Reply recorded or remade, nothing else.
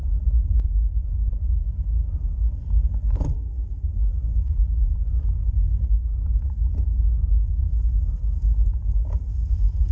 recorded